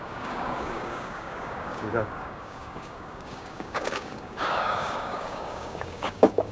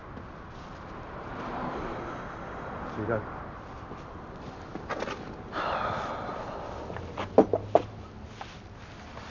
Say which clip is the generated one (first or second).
first